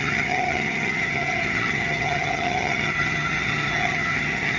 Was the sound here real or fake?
fake